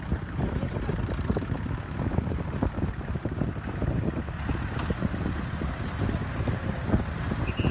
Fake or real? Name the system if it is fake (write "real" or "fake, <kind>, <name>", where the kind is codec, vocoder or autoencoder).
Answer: real